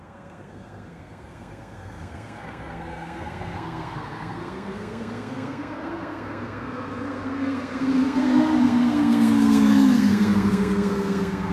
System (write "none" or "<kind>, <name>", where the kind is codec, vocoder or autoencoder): codec, SNAC